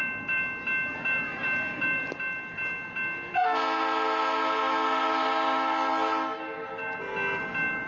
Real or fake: real